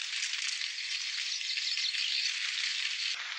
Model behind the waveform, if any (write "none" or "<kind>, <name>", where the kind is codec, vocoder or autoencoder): none